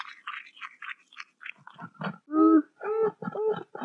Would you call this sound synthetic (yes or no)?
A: no